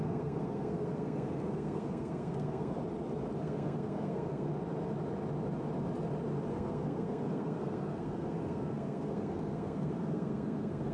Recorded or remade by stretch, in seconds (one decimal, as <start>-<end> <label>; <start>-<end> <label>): 0.0-2.8 remade; 2.8-3.4 recorded; 3.4-4.5 remade; 4.5-6.5 recorded; 6.5-10.9 remade